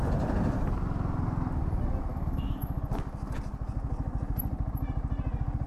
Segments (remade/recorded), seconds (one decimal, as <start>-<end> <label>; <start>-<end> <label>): 0.0-2.1 recorded; 2.1-2.8 remade; 2.8-5.7 recorded